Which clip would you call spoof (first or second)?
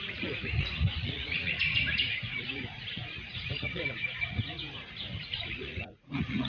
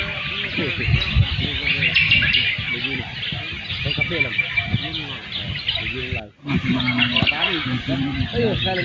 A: first